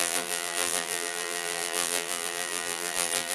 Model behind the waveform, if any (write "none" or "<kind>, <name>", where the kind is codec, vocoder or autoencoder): vocoder, BigVGAN v2